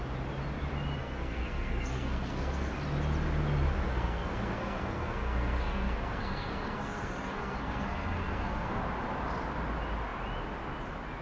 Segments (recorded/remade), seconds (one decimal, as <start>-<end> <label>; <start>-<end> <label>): 0.0-1.0 recorded; 1.0-2.7 remade; 2.7-3.9 recorded; 3.9-8.8 remade; 8.8-11.2 recorded